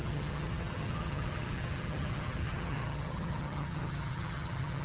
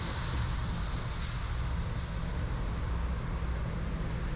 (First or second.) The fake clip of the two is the first